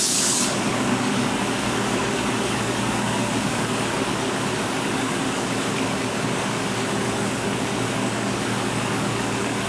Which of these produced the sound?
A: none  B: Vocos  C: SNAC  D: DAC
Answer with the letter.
D